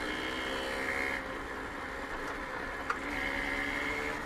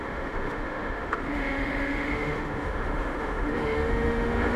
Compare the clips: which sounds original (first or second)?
first